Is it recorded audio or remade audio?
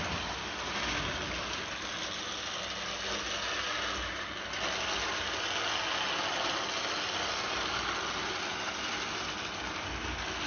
recorded